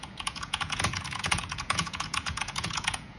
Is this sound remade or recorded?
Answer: remade